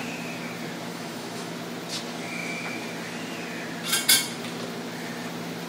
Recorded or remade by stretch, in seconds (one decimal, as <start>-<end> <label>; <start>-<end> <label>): 0.0-0.9 recorded; 0.9-1.5 remade; 1.5-5.7 recorded